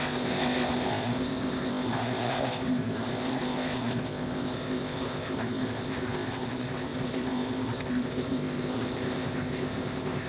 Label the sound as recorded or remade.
remade